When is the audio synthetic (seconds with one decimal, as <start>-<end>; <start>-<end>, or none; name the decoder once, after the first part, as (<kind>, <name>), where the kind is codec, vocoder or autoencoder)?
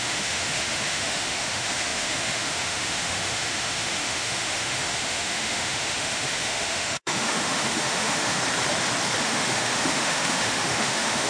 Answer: 0.0-8.4 (autoencoder, DAC-VAE); 9.2-11.3